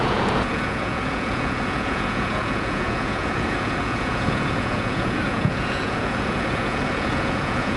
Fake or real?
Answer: fake